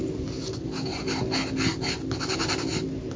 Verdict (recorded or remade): recorded